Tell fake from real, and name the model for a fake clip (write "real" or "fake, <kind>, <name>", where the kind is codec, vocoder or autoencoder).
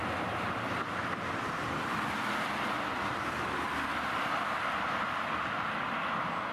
real